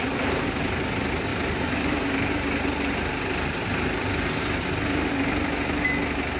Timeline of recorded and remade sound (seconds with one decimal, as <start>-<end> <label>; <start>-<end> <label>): 0.0-6.4 recorded

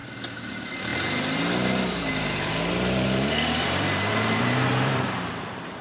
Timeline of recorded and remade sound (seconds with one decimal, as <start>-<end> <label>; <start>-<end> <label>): 0.0-5.8 remade